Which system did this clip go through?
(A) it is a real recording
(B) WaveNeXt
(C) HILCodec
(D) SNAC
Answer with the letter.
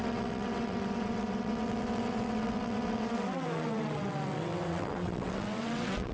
B